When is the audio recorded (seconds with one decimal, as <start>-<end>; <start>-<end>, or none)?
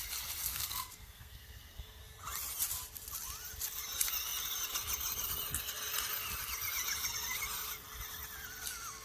0.0-0.5; 2.0-9.0